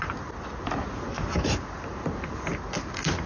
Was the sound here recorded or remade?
recorded